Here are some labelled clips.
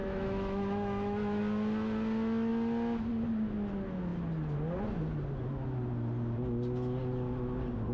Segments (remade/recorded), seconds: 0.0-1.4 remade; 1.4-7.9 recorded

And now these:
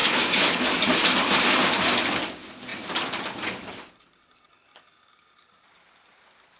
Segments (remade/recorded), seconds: 0.0-0.8 remade; 0.8-6.6 recorded